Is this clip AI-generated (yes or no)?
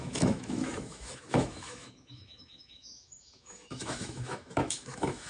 yes